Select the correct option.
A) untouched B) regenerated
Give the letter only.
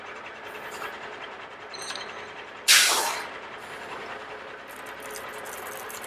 A